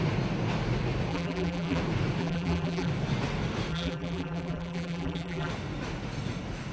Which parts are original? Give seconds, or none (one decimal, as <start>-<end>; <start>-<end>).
0.0-1.1; 1.8-2.2; 2.9-3.7; 5.5-6.7